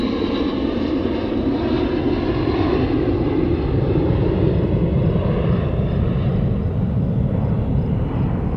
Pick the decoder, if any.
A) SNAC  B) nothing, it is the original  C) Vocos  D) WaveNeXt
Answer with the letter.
B